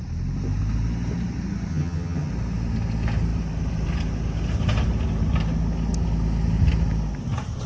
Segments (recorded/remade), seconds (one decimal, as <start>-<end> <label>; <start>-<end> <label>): 0.0-1.7 recorded; 1.7-2.3 remade; 2.3-7.7 recorded